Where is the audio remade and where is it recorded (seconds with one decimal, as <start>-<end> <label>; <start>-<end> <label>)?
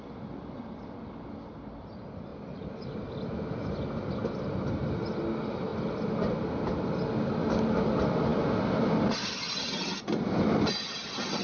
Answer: 0.0-11.4 recorded